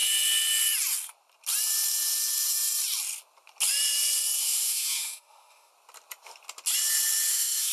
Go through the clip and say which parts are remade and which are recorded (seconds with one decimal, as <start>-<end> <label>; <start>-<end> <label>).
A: 0.0-4.4 recorded; 4.4-5.7 remade; 5.7-7.3 recorded; 7.3-7.7 remade